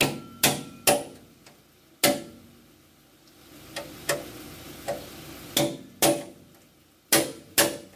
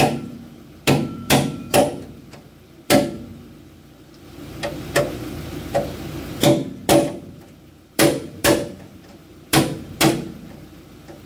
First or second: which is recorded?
first